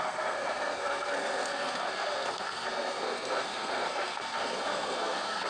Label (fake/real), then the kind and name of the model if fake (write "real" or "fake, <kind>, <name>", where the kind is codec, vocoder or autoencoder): fake, codec, SNAC